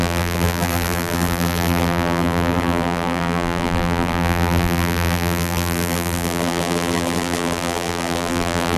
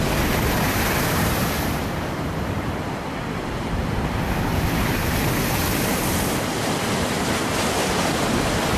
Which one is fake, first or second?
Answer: first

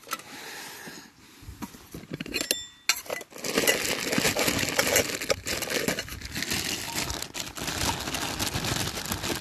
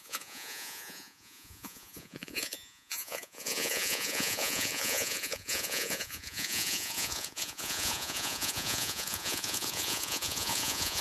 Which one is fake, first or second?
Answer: second